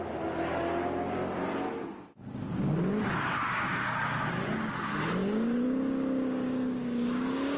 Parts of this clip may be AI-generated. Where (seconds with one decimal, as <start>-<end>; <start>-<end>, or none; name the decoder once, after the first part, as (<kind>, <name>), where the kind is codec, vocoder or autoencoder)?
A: 3.3-3.9 (codec, DAC); 5.2-7.6